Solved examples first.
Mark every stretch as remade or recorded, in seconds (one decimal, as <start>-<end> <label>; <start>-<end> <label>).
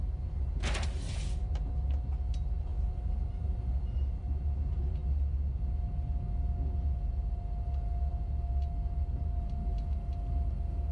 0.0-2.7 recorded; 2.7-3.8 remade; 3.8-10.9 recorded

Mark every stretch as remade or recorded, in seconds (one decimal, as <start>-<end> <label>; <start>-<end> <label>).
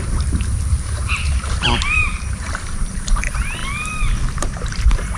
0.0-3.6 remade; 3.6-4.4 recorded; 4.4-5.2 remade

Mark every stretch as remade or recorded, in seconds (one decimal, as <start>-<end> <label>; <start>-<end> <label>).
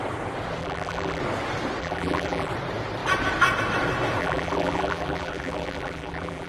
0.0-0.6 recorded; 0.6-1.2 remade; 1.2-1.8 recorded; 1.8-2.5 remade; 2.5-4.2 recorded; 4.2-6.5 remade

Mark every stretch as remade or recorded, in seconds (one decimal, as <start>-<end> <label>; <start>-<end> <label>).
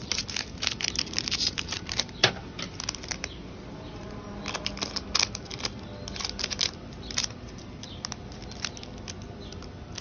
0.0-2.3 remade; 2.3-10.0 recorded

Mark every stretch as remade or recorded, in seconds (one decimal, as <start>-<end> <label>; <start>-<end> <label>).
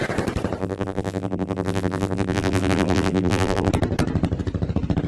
0.0-0.6 recorded; 0.6-3.7 remade; 3.7-5.1 recorded